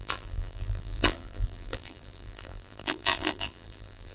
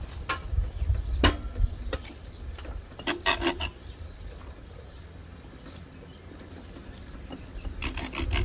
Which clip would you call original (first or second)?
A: second